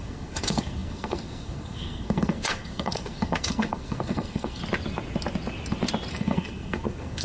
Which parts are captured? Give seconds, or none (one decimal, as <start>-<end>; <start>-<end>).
4.6-6.1